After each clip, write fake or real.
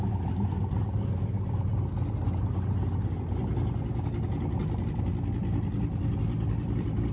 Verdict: real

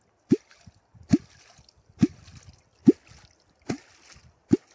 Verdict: real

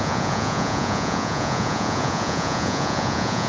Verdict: fake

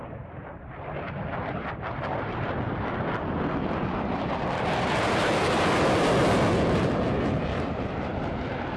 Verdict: fake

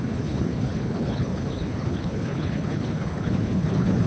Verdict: fake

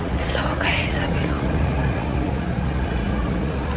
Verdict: fake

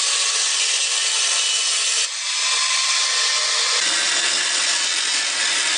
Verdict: real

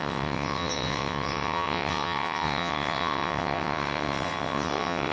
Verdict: fake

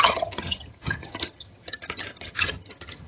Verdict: fake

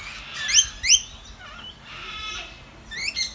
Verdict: real